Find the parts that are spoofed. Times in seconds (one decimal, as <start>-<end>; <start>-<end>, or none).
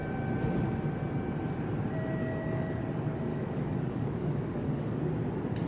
2.2-2.8; 3.3-5.0